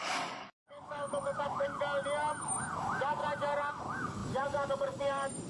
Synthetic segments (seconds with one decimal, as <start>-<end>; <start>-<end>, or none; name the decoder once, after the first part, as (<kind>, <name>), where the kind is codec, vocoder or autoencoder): 0.0-1.7 (codec, DAC); 2.4-3.2; 3.7-5.5